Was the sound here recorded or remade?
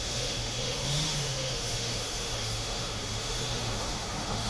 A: remade